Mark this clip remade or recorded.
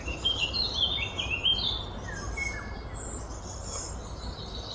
recorded